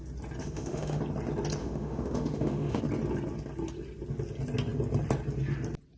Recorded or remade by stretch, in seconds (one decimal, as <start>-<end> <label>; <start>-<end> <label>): 0.0-0.4 recorded; 0.4-1.0 remade; 1.0-1.6 recorded; 1.6-2.8 remade; 2.8-6.0 recorded

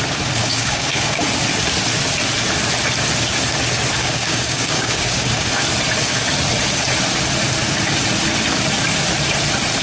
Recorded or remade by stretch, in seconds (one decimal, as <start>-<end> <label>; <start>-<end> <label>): 0.0-0.4 recorded; 0.4-1.2 remade; 1.2-4.0 recorded; 4.0-5.5 remade; 5.5-9.8 recorded

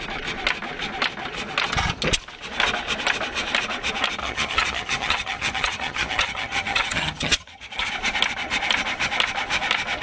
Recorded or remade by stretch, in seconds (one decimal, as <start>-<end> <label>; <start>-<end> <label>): 0.0-4.2 recorded; 4.2-7.9 remade; 7.9-10.0 recorded

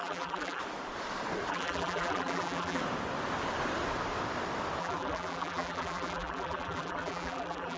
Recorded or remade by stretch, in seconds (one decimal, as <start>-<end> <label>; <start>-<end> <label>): 0.0-0.6 remade; 0.6-1.5 recorded; 1.5-2.8 remade; 2.8-4.8 recorded; 4.8-7.8 remade

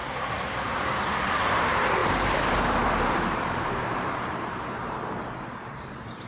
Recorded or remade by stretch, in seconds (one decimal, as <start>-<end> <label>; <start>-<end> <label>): 0.0-6.3 remade

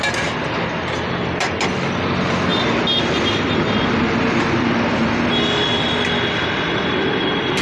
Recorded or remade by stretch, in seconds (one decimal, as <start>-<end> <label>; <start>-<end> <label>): 0.0-7.6 recorded

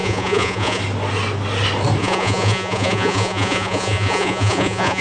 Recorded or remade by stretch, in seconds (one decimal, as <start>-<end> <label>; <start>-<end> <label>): 0.0-0.8 remade; 0.8-2.0 recorded; 2.0-5.0 remade

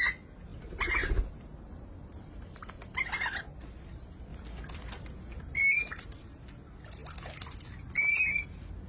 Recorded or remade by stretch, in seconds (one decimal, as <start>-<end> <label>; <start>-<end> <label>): 0.0-8.9 recorded